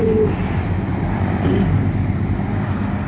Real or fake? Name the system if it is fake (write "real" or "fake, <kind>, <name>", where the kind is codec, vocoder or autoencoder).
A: real